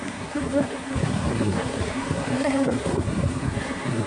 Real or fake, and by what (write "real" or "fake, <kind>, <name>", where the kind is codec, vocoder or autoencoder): fake, codec, SNAC